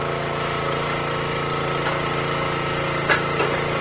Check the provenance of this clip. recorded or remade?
recorded